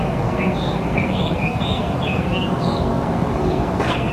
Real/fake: fake